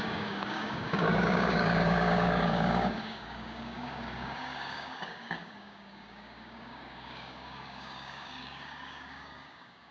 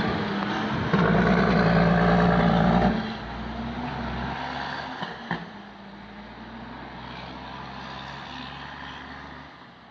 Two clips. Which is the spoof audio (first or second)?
first